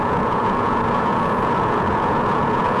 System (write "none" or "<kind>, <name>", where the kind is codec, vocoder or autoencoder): vocoder, Vocos